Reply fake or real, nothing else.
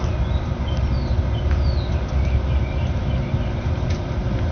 real